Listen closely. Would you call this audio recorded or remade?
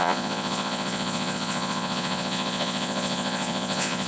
remade